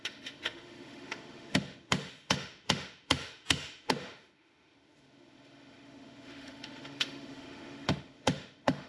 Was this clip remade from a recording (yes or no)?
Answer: yes